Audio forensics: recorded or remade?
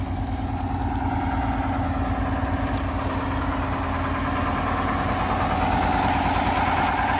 recorded